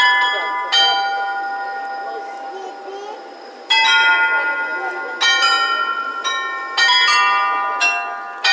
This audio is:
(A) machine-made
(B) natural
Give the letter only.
B